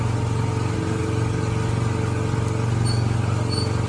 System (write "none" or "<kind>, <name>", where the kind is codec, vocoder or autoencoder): none